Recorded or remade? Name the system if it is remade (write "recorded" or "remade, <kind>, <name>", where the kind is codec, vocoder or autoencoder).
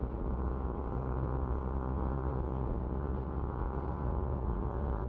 remade, vocoder, Vocos